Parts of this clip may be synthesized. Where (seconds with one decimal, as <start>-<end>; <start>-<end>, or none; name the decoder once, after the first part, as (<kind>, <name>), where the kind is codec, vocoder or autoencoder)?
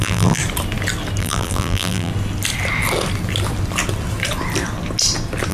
0.0-0.4 (vocoder, BigVGAN v2); 1.2-2.1